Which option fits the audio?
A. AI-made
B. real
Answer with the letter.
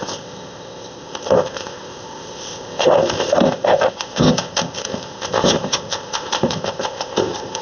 A